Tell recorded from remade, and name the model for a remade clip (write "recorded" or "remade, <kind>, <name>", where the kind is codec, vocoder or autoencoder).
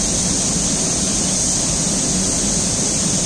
recorded